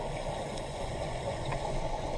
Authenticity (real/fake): fake